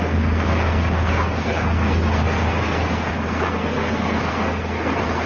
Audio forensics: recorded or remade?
remade